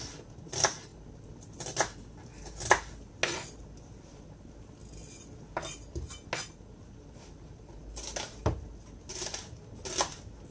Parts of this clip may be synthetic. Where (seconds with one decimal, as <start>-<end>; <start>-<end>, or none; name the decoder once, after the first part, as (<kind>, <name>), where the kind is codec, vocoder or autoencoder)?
none